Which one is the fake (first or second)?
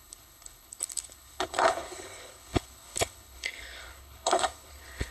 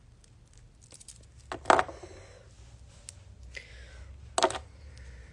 first